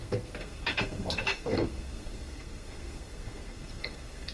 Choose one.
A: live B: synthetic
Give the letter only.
B